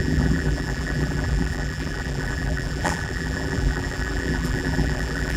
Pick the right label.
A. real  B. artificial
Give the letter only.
B